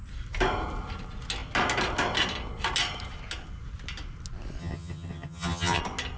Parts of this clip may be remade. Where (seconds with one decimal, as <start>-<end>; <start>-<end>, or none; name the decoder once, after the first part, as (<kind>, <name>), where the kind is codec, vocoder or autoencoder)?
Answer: 4.6-5.8 (vocoder, HiFi-GAN)